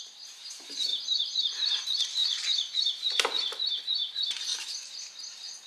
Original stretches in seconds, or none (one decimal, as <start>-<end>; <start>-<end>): 0.9-1.4; 4.5-5.7

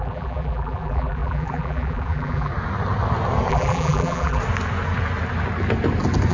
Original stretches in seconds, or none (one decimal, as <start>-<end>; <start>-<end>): 2.5-3.5; 4.4-6.3

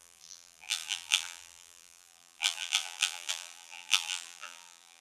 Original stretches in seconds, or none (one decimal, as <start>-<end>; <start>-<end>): none

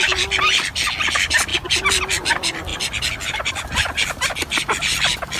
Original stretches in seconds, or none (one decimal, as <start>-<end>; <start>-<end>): 0.0-5.4

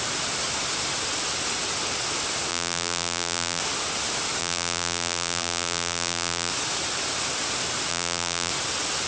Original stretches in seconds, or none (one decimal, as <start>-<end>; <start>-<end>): 0.0-2.5; 3.6-4.4; 6.5-7.9; 8.5-9.1

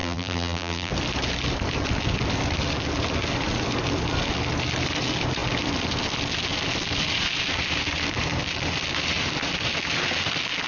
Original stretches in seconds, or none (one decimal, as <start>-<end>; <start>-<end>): 0.9-10.7

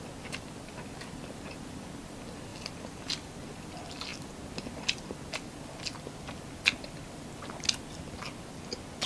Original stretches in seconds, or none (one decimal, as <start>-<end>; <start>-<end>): 0.0-2.5; 3.3-9.1